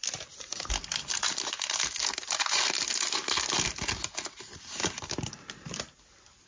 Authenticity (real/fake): real